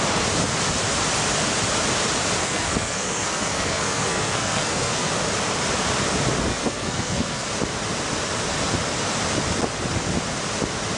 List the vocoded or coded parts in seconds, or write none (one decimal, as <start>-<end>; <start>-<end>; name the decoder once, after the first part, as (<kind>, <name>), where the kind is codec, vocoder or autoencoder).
2.4-5.1 (codec, SNAC); 6.5-7.5